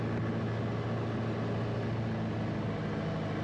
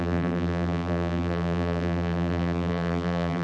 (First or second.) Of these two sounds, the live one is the first